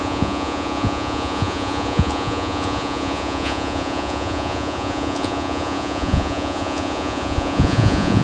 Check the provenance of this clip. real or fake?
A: fake